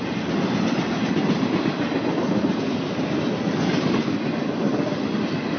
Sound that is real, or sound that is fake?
real